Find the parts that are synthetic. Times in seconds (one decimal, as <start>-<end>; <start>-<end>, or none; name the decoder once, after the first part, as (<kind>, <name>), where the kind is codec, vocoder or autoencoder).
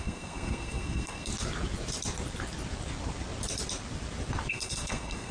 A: 0.0-1.3 (codec, SNAC); 4.5-5.3